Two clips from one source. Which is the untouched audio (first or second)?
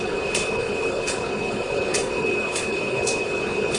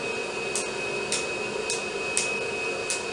second